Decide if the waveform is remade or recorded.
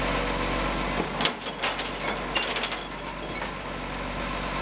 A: recorded